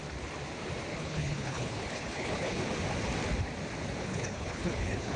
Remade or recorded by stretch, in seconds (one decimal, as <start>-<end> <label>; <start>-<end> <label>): 0.0-0.9 recorded; 0.9-2.6 remade; 2.6-4.0 recorded; 4.0-5.2 remade